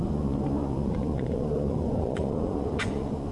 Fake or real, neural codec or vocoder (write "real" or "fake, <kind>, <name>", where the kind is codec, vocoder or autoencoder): fake, vocoder, Vocos